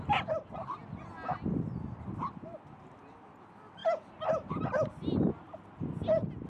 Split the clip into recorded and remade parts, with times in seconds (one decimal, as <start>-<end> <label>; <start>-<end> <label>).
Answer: 0.0-3.8 recorded; 3.8-4.5 remade; 4.5-6.5 recorded